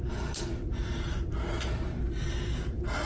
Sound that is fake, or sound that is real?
fake